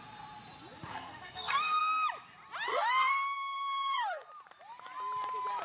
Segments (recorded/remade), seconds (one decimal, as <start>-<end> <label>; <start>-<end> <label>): 0.0-0.9 recorded; 0.9-1.8 remade; 1.8-2.7 recorded; 2.7-4.3 remade; 4.3-5.6 recorded